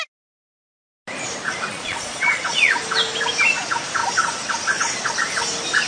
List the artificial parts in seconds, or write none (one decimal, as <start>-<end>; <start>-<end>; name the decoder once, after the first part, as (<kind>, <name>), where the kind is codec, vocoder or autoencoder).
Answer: 1.7-2.7 (vocoder, Vocos)